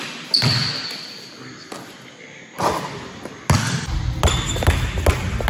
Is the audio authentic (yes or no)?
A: yes